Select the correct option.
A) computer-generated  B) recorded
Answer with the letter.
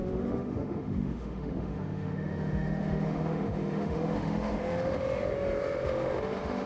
A